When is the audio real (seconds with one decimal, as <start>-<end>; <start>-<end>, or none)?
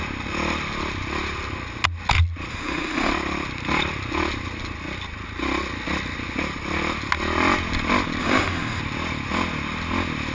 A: 0.0-2.5; 3.1-8.2; 8.8-10.3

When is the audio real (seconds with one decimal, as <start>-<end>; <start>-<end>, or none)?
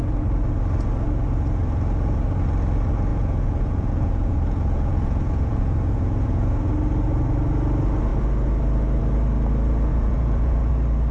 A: 0.0-3.1; 6.7-9.9; 10.7-11.1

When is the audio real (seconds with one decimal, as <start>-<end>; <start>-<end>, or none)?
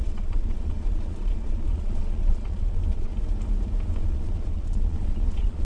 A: 3.1-3.9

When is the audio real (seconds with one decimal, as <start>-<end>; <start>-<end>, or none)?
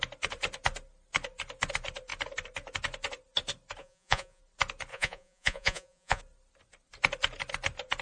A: 0.0-3.8; 4.4-4.9; 6.2-8.0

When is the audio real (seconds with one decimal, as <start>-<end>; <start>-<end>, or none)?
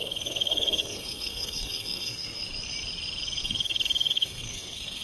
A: 2.4-3.4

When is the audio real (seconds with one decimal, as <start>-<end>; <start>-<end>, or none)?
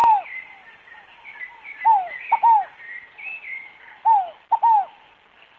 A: 0.0-5.6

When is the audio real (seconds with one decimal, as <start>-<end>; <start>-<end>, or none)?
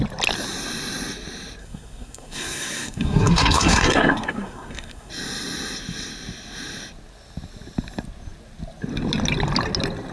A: 0.0-1.6; 5.1-10.1